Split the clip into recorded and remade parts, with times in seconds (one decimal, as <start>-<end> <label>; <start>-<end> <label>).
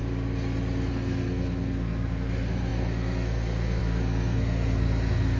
0.0-0.9 recorded; 0.9-5.4 remade